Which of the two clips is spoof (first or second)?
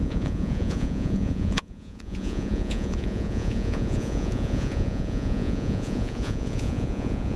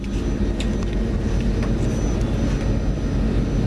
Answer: first